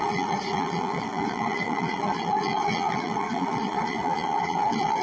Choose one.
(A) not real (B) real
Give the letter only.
A